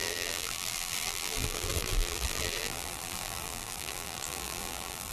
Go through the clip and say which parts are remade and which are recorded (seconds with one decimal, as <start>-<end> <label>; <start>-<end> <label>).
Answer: 0.0-5.1 remade